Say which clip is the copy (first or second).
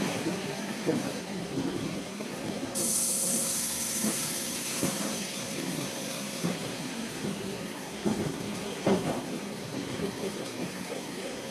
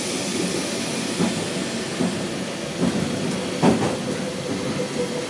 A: first